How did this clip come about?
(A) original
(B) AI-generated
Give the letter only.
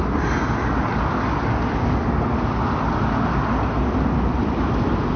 A